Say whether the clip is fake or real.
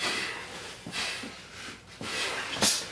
real